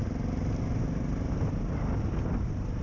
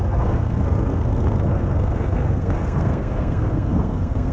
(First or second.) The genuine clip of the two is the first